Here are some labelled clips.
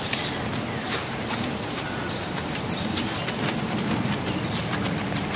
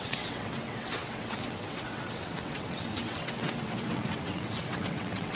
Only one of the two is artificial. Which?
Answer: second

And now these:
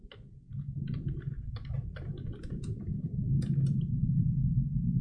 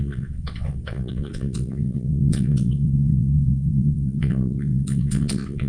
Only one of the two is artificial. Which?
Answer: second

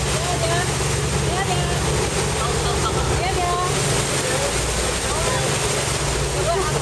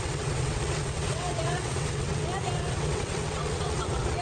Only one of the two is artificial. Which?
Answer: second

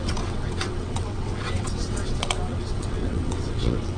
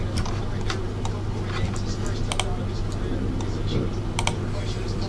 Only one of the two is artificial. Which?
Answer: first